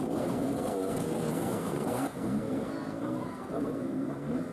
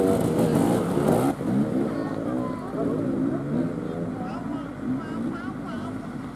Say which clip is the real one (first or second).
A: second